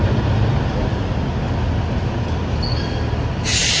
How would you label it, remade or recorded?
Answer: recorded